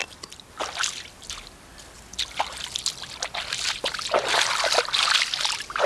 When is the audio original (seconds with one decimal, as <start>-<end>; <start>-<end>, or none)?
0.0-5.9